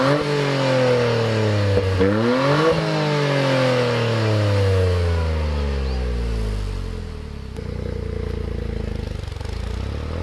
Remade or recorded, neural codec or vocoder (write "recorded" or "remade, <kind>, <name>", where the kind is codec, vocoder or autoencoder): recorded